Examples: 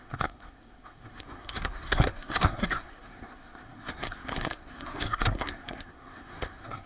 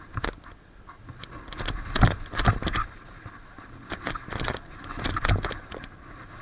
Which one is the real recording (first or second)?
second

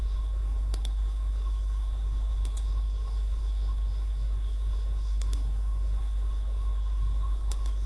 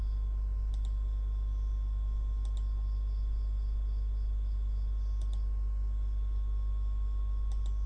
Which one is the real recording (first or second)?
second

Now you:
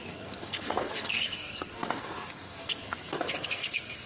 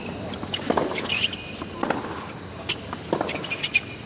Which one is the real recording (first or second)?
second